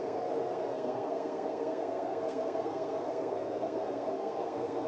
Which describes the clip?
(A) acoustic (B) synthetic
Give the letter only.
B